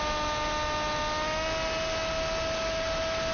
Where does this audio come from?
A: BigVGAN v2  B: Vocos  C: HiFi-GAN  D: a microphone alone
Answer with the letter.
D